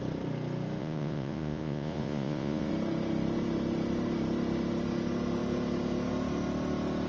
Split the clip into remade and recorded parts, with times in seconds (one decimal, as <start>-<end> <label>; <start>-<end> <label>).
0.0-0.8 recorded; 0.8-2.7 remade; 2.7-7.1 recorded